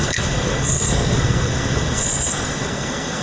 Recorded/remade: remade